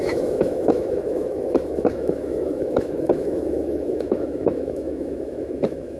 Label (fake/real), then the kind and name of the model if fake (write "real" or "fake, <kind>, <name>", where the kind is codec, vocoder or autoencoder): fake, autoencoder, DAC-VAE